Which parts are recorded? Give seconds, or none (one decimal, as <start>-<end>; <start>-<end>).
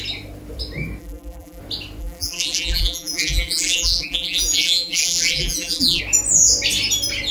0.0-1.0; 1.6-2.0; 6.0-7.3